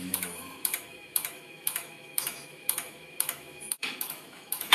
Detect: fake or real fake